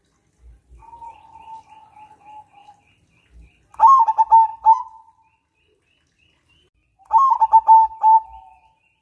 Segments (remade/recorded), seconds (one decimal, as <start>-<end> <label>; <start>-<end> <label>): 0.0-9.0 recorded